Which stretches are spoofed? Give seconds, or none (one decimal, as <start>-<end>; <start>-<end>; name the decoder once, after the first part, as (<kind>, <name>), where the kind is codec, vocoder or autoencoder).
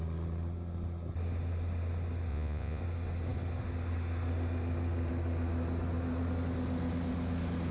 2.3-2.8 (vocoder, Vocos)